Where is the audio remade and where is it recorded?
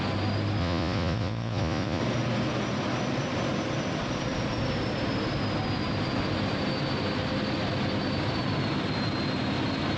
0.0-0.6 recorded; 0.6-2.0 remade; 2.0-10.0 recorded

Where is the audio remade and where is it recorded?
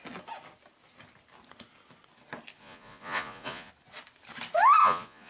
0.0-2.6 recorded; 2.6-3.7 remade; 3.7-4.8 recorded; 4.8-5.3 remade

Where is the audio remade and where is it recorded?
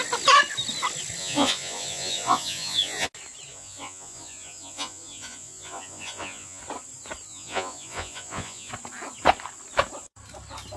0.0-1.2 recorded; 1.2-3.1 remade; 3.1-3.5 recorded; 3.5-6.6 remade; 6.6-7.3 recorded; 7.3-8.7 remade; 8.7-10.8 recorded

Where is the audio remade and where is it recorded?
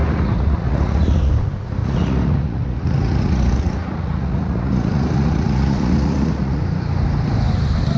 0.0-1.3 remade; 1.3-1.8 recorded; 1.8-6.6 remade; 6.6-8.0 recorded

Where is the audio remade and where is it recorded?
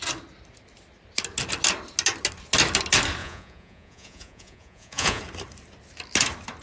0.0-3.2 recorded; 3.2-5.2 remade; 5.2-6.6 recorded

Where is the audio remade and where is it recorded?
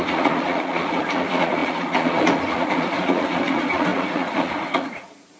0.0-5.4 remade